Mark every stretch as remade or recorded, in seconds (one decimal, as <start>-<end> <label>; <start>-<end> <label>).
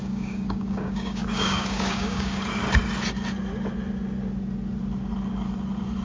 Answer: 0.0-2.4 remade; 2.4-6.0 recorded